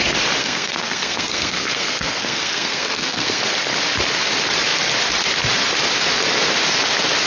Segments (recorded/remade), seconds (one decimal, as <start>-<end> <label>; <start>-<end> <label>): 0.0-0.4 recorded; 0.4-3.4 remade; 3.4-7.3 recorded